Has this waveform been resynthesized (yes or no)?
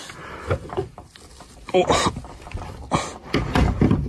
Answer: yes